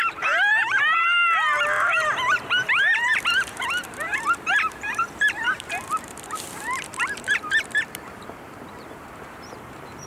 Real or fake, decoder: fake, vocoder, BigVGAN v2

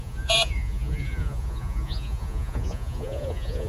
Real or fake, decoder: fake, vocoder, Vocos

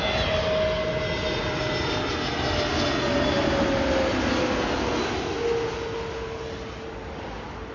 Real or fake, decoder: real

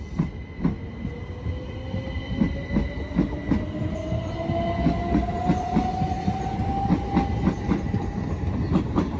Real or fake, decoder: real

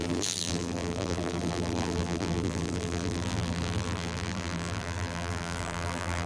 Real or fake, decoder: fake, vocoder, BigVGAN v2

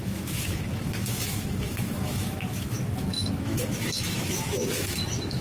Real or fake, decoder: fake, autoencoder, DAC-VAE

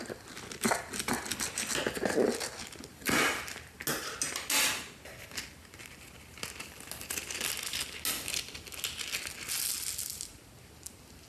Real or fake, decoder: real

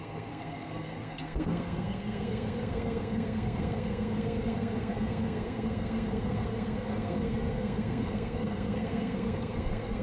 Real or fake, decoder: fake, codec, SNAC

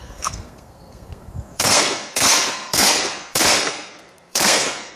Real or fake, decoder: fake, codec, SNAC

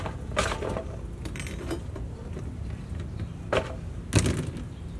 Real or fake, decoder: real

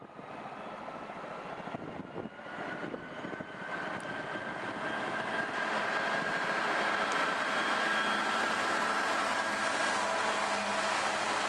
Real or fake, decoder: real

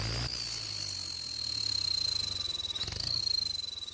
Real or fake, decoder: real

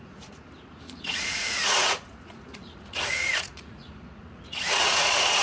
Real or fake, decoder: fake, vocoder, Vocos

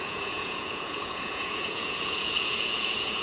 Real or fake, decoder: fake, vocoder, Vocos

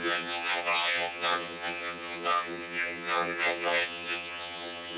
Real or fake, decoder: fake, vocoder, HiFi-GAN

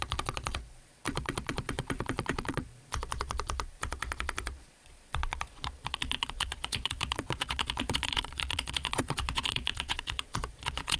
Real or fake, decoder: fake, vocoder, Vocos